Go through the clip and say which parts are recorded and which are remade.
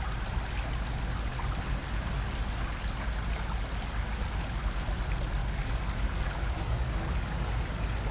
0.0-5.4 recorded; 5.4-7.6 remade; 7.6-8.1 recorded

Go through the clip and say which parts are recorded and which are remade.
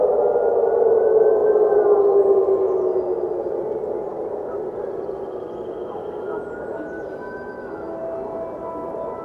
0.0-9.2 recorded